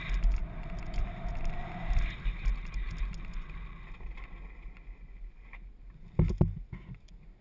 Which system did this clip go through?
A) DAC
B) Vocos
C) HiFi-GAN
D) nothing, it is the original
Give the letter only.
D